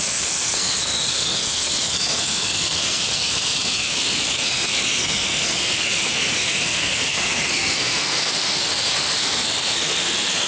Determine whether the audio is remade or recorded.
remade